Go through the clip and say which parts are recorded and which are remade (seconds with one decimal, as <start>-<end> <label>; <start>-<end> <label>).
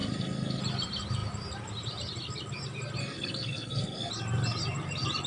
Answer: 0.0-0.6 remade; 0.6-3.0 recorded; 3.0-4.1 remade; 4.1-5.3 recorded